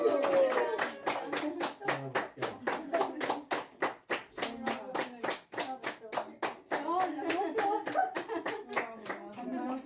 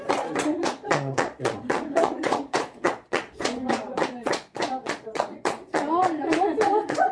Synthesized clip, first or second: second